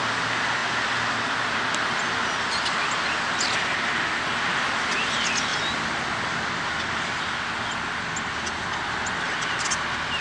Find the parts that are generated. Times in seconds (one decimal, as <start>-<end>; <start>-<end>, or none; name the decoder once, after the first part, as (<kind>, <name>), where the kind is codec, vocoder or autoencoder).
none